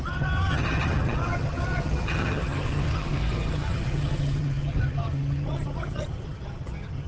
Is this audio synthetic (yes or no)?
yes